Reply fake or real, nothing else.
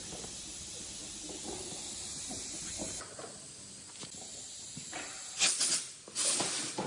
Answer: real